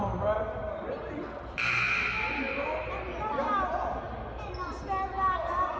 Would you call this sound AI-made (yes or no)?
no